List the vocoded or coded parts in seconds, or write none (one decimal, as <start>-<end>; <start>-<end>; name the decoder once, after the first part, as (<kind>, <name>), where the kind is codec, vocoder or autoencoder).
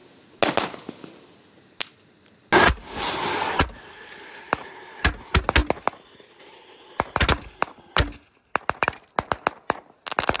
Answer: none